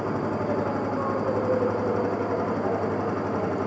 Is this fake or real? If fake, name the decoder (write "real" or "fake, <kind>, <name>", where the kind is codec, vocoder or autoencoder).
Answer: real